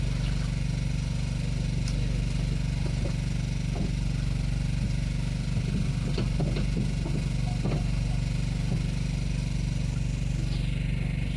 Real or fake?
real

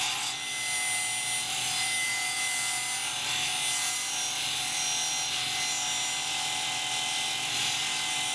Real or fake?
real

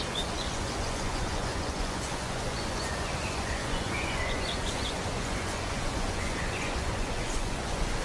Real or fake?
fake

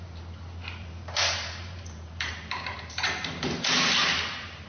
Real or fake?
fake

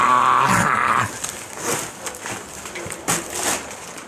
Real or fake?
real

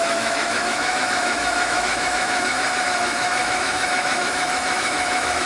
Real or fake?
fake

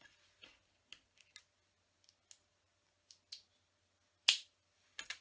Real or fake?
real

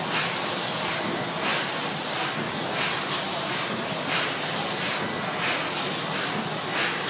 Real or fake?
real